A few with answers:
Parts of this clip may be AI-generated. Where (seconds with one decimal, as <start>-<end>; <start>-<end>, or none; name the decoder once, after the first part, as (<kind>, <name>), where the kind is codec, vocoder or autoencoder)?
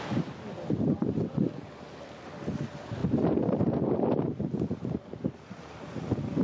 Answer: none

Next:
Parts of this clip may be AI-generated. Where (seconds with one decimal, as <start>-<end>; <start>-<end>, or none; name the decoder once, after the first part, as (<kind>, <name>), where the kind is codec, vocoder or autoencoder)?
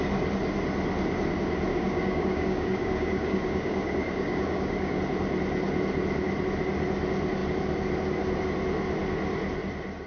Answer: 1.7-5.0 (codec, DAC)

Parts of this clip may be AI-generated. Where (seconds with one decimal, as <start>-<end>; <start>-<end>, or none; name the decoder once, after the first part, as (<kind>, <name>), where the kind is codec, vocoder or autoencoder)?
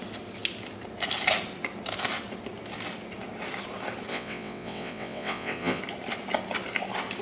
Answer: 4.1-5.8 (vocoder, WaveNeXt)